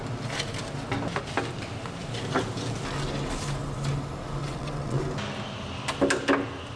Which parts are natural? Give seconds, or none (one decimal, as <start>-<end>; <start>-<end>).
0.0-4.4; 5.0-6.8